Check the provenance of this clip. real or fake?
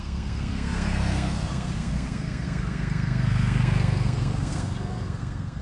fake